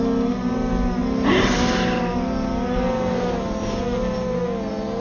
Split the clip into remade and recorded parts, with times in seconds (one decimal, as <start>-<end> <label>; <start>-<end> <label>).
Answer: 0.0-5.0 recorded